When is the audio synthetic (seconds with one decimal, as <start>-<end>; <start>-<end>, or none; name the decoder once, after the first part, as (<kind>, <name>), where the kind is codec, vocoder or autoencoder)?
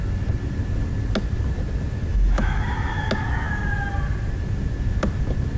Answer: 2.1-3.1 (autoencoder, DAC-VAE)